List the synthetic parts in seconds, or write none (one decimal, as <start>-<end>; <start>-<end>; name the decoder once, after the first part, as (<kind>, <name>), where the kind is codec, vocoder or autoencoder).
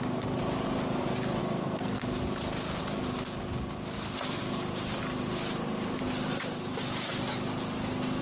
1.4-2.0 (codec, SNAC)